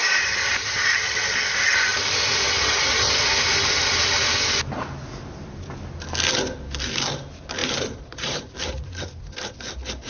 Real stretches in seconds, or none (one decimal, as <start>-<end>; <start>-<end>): 1.0-7.6; 9.2-10.1